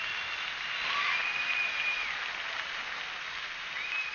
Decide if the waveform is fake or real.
real